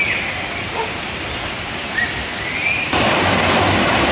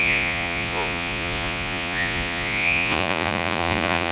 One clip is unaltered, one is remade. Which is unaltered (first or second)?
first